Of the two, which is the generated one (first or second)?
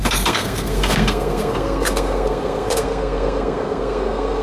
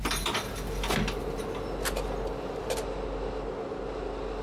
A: first